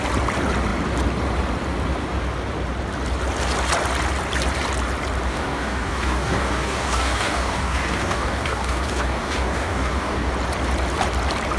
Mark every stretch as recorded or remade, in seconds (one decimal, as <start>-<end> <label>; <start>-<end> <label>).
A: 0.0-5.3 recorded; 5.3-10.3 remade; 10.3-11.6 recorded